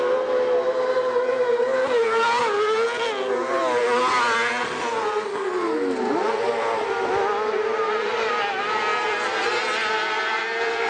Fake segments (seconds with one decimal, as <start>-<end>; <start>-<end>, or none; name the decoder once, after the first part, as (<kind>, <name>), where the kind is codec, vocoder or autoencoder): 6.2-7.1 (vocoder, BigVGAN v2)